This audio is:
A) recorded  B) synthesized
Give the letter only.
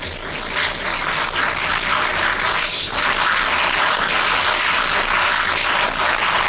A